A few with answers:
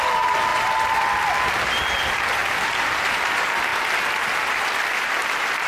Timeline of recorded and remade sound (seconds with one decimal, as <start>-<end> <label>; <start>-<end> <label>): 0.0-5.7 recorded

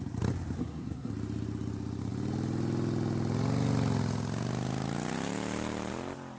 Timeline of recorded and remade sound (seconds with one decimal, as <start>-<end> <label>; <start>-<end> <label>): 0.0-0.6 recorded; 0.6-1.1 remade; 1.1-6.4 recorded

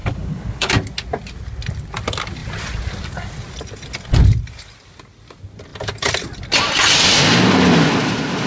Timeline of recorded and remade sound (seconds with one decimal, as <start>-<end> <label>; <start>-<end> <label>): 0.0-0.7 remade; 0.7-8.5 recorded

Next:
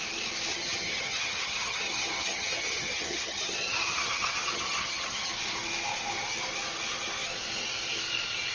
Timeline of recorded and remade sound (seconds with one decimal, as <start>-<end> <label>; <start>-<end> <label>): 0.0-0.5 recorded; 0.5-5.3 remade; 5.3-8.5 recorded

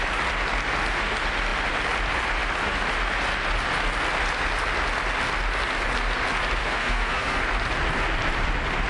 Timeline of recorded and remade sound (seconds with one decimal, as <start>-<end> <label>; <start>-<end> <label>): 0.0-6.6 recorded; 6.6-7.4 remade; 7.4-8.9 recorded